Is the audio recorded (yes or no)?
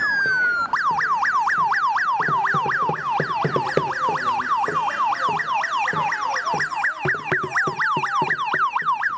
yes